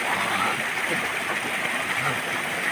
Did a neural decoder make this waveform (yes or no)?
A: no